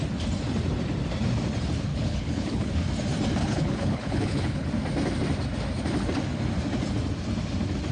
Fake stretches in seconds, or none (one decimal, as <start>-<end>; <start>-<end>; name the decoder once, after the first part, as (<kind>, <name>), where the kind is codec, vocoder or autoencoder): 1.9-2.7 (codec, HILCodec); 3.4-4.7